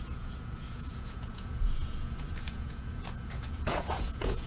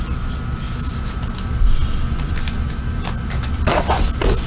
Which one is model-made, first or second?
first